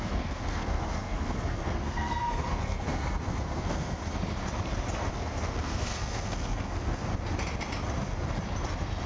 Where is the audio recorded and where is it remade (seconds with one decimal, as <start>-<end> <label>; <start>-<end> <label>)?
0.0-4.0 remade; 4.0-5.1 recorded; 5.1-7.1 remade; 7.1-9.1 recorded